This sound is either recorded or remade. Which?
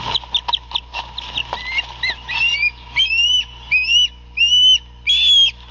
recorded